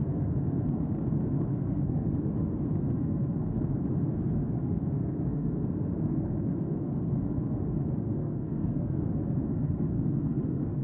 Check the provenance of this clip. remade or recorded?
remade